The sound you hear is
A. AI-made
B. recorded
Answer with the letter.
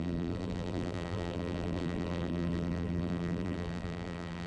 A